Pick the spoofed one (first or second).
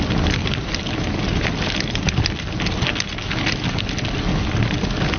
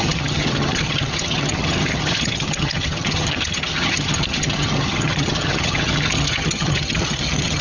second